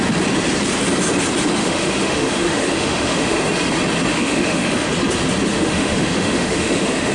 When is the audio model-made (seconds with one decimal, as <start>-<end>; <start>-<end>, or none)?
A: 1.6-3.4; 4.1-4.9; 5.5-7.1